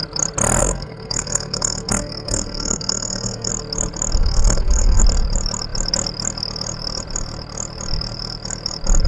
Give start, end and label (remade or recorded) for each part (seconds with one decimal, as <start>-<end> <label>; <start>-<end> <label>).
0.0-0.6 recorded; 0.6-3.5 remade; 3.5-4.2 recorded; 4.2-5.0 remade; 5.0-9.1 recorded